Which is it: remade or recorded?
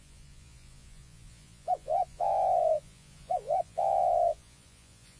remade